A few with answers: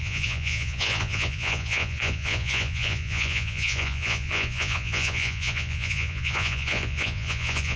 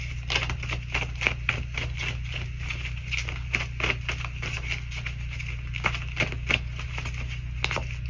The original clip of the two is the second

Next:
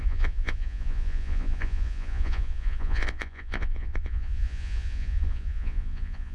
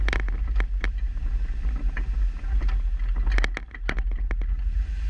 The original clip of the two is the second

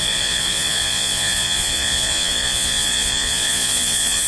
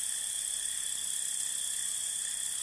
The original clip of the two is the second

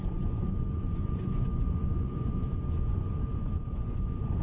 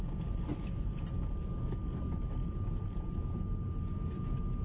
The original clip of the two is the second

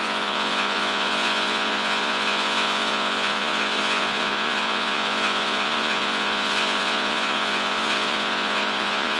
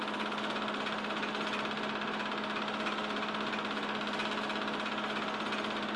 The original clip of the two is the second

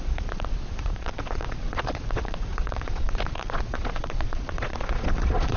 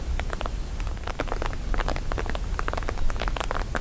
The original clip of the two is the second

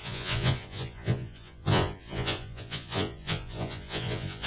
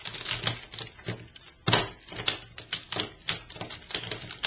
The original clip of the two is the second